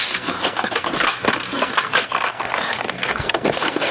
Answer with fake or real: fake